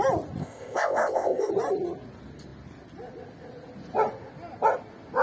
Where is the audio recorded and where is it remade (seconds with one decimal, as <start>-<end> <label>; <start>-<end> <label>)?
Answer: 0.0-0.4 recorded; 0.4-1.5 remade; 1.5-5.2 recorded